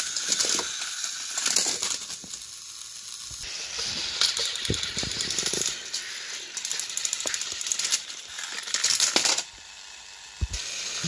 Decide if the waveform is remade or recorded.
recorded